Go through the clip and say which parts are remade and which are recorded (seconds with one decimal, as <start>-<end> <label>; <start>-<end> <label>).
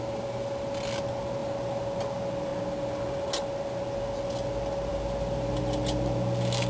0.0-6.7 recorded